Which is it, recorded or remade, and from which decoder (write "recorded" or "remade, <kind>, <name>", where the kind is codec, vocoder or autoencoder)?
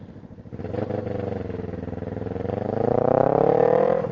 remade, vocoder, BigVGAN v2